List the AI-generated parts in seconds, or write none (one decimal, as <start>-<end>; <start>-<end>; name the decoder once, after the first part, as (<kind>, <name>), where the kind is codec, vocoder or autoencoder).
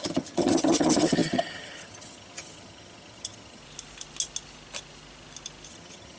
0.0-3.6 (vocoder, HiFi-GAN); 5.7-6.2